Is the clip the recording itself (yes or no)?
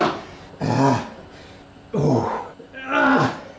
yes